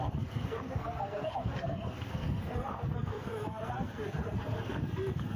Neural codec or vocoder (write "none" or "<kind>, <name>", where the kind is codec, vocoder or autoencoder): codec, SNAC